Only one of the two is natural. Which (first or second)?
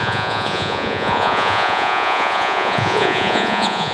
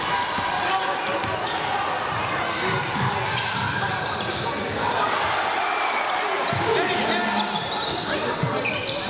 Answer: second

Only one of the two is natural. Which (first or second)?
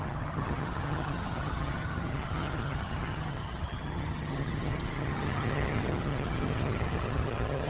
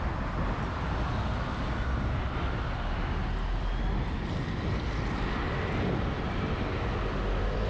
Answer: second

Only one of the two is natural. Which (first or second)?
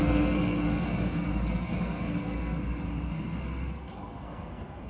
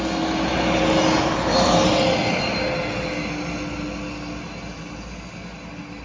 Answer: second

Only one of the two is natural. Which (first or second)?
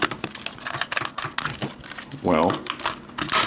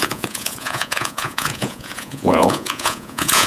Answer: first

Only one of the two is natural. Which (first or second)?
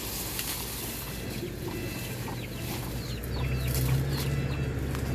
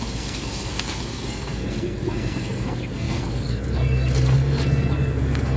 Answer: first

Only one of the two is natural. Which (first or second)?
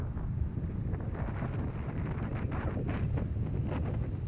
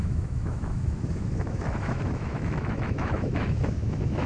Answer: first